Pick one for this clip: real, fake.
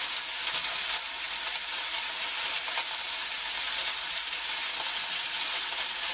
real